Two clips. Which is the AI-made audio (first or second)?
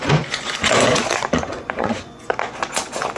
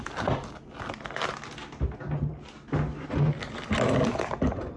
first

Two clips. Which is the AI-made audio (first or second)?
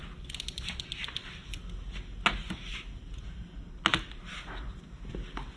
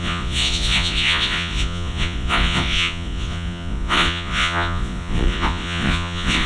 second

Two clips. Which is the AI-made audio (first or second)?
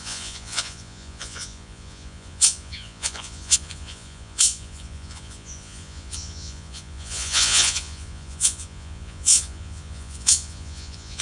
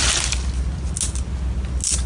first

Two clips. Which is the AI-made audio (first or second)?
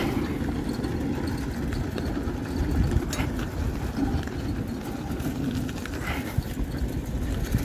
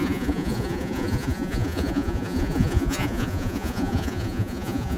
second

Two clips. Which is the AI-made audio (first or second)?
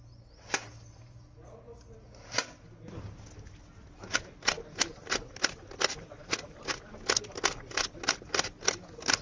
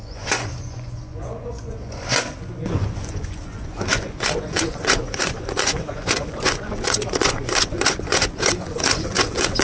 second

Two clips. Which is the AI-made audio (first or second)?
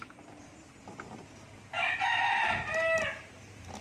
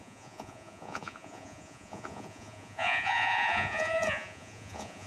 second